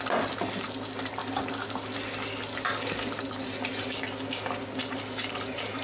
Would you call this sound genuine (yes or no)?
yes